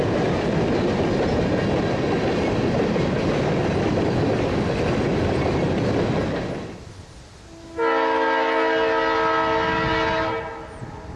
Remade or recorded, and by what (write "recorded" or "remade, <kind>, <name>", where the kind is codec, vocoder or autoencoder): recorded